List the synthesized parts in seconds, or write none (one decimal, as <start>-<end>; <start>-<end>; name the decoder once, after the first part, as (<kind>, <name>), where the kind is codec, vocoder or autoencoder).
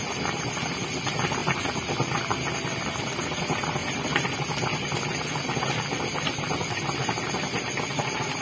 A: none